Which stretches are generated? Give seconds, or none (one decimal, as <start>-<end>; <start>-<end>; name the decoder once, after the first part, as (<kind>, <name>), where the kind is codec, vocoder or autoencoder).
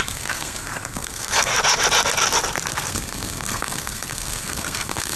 0.0-1.5 (codec, SNAC); 2.7-5.2